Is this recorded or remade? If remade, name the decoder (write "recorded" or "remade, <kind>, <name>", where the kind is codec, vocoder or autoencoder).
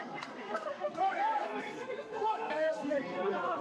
remade, codec, SNAC